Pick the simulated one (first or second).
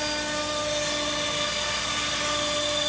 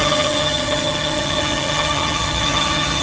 second